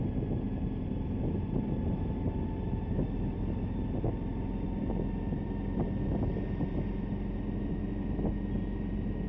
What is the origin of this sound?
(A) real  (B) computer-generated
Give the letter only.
A